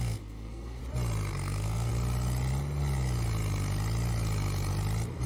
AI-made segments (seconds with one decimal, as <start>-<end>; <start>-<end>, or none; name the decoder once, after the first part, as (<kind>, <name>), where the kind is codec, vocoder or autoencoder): 0.0-0.8 (codec, SNAC); 1.3-1.9